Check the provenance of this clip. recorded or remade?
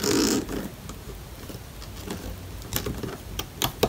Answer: recorded